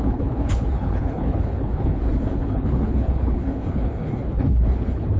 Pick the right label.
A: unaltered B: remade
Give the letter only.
B